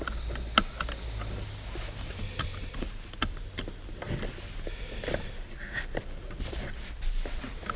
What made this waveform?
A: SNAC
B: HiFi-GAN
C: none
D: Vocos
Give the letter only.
C